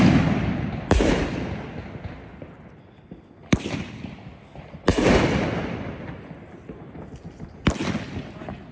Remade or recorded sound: recorded